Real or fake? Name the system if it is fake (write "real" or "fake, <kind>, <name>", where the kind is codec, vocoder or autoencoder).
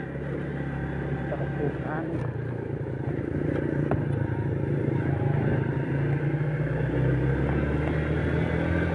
real